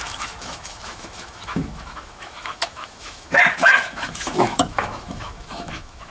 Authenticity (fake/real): fake